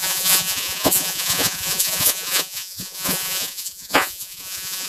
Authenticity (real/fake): fake